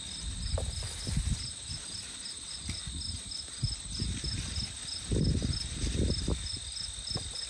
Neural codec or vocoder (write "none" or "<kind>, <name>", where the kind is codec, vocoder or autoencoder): none